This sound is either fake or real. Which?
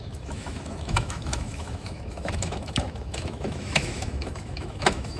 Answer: fake